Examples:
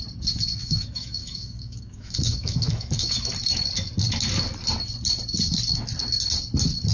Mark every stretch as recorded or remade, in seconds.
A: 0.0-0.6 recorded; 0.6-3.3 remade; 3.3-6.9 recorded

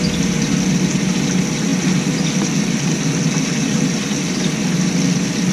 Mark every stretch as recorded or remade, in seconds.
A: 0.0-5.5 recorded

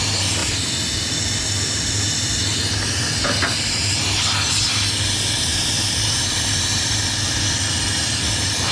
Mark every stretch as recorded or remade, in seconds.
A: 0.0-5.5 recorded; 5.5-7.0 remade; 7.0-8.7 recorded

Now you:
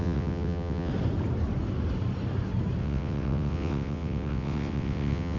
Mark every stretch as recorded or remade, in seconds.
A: 0.0-0.9 remade; 0.9-2.8 recorded; 2.8-5.4 remade

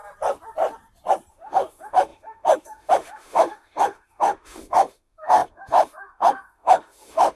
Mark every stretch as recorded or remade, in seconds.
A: 0.0-1.3 recorded; 1.3-7.4 remade